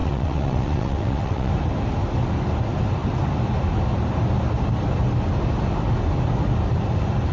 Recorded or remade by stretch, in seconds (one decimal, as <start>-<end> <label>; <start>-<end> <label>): 0.0-1.5 remade; 1.5-7.3 recorded